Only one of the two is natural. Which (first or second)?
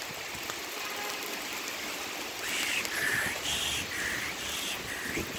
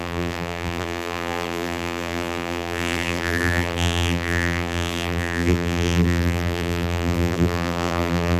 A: first